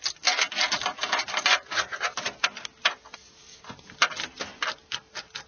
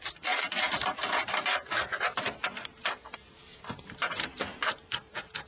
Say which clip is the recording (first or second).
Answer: first